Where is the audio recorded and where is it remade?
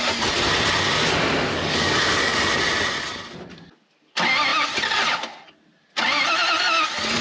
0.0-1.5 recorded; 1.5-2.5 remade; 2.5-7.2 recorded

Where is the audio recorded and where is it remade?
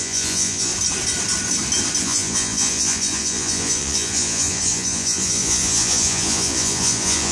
0.0-0.7 remade; 0.7-2.0 recorded; 2.0-7.3 remade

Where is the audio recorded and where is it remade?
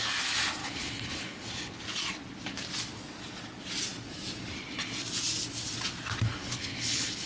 0.0-0.6 recorded; 0.6-1.8 remade; 1.8-6.4 recorded; 6.4-7.3 remade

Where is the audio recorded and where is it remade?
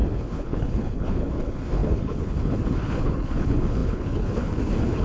0.0-5.0 remade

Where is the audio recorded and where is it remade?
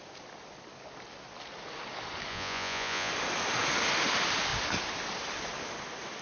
0.0-2.3 recorded; 2.3-3.1 remade; 3.1-6.2 recorded